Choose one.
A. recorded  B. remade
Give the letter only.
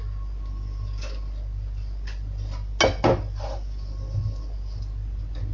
A